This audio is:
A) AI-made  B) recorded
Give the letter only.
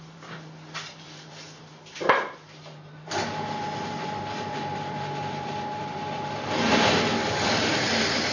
A